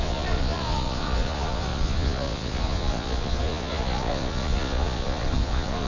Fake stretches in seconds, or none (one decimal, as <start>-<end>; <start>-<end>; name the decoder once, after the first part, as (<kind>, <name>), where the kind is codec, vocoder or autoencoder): 0.0-5.9 (vocoder, Vocos)